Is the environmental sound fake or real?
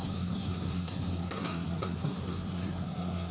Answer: fake